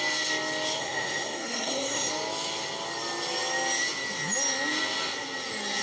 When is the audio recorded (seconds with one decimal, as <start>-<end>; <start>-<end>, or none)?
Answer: 0.0-0.8; 2.1-5.8